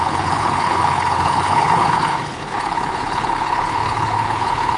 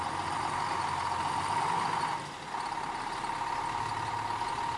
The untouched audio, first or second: second